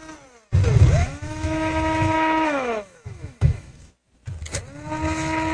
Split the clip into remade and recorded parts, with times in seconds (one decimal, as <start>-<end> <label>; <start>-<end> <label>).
0.0-1.0 recorded; 1.0-3.9 remade; 3.9-5.5 recorded